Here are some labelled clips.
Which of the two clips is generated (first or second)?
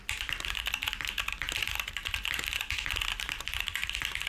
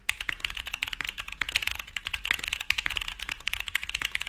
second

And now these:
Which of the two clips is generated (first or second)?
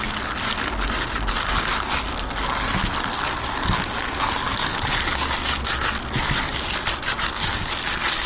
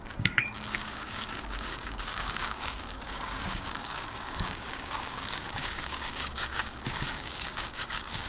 second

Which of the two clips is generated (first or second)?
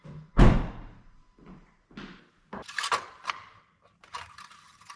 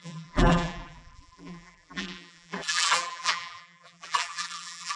second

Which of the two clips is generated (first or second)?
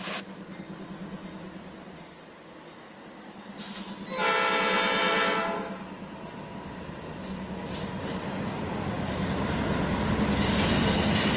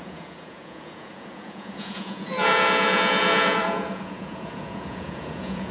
second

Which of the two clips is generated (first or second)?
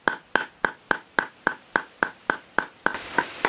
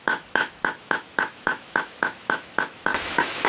second